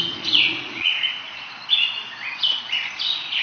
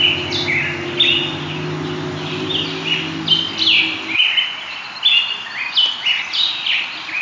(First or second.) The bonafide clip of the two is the second